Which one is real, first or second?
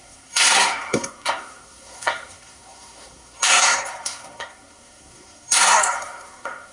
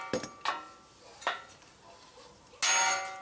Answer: second